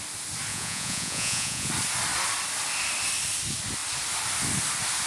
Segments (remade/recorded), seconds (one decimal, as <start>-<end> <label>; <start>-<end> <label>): 0.0-0.5 recorded; 0.5-1.7 remade; 1.7-5.1 recorded